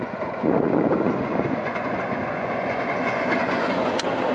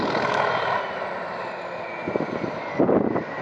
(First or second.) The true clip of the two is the second